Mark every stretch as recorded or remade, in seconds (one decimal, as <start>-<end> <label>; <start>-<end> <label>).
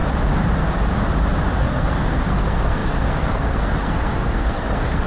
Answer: 0.0-1.6 recorded; 1.6-5.1 remade